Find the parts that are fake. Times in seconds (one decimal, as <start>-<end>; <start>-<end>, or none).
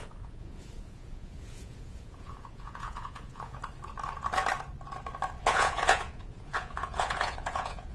0.0-3.6; 5.4-7.9